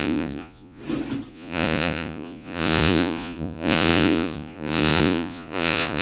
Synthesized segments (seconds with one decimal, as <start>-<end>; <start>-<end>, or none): 0.0-0.8; 1.3-6.0